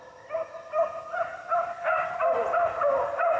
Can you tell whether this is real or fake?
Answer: real